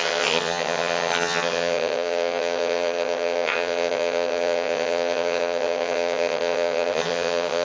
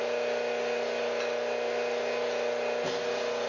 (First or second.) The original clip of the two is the second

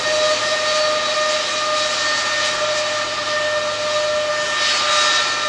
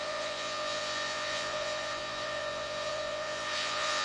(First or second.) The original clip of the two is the first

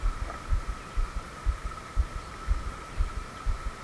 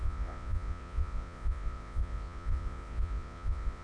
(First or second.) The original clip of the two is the first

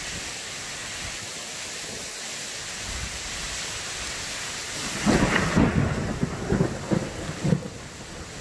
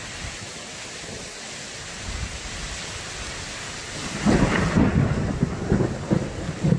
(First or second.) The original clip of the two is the first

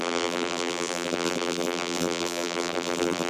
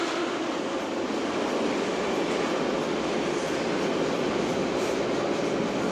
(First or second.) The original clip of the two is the second